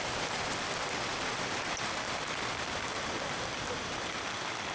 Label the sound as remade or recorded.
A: recorded